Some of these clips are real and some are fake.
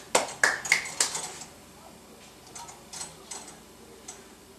real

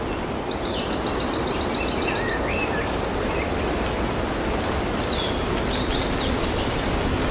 real